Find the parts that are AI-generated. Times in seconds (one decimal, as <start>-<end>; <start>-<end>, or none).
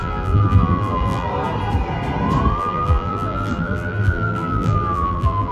0.0-1.3; 2.5-5.5